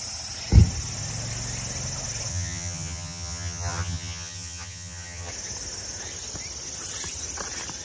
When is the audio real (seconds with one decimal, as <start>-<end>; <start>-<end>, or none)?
0.0-2.3; 5.3-7.8